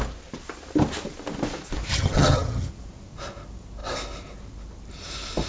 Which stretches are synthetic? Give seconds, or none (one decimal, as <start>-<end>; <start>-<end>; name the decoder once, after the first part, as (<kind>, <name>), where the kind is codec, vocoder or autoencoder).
1.9-2.7 (vocoder, HiFi-GAN)